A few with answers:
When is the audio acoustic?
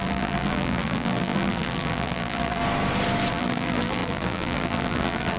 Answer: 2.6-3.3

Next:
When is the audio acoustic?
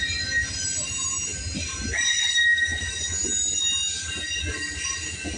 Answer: 0.0-5.4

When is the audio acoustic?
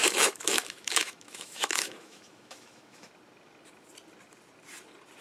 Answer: 3.1-5.2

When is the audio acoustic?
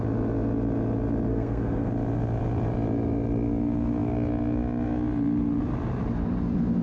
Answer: 0.0-1.3; 1.9-6.8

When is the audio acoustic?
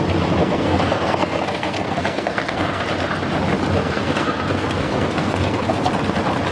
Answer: 0.0-0.4; 2.8-3.8; 5.9-6.5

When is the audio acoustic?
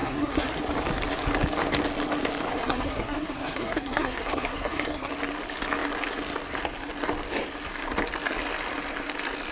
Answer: 0.6-2.5; 5.1-9.5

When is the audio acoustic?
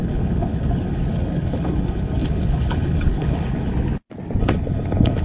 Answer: 3.7-4.4